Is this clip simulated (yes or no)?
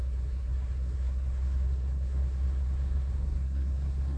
yes